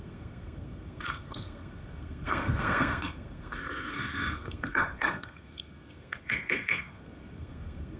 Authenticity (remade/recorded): remade